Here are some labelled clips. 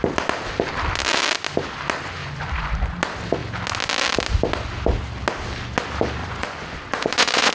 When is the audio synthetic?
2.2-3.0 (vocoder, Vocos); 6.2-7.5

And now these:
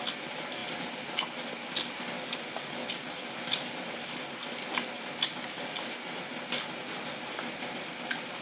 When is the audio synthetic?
none

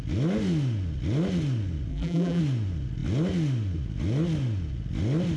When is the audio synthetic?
1.9-2.4 (vocoder, BigVGAN v2)